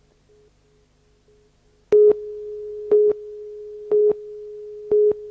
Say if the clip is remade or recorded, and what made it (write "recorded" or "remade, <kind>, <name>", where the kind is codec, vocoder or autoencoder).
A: recorded